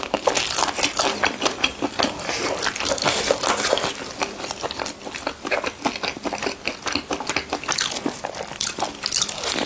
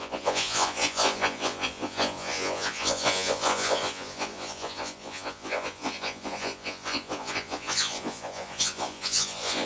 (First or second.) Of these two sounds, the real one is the first